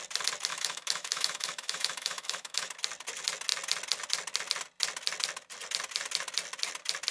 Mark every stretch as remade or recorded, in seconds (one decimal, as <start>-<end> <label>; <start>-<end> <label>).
0.0-0.5 recorded; 0.5-2.7 remade; 2.7-7.1 recorded